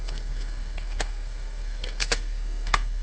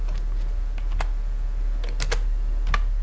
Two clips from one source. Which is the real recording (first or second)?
second